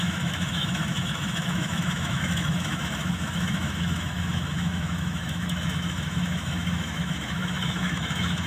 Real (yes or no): no